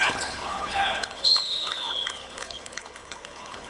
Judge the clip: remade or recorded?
remade